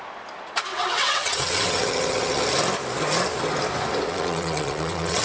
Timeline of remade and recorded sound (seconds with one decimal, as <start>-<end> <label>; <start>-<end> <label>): 0.0-0.7 recorded; 0.7-2.4 remade; 2.4-4.1 recorded; 4.1-5.2 remade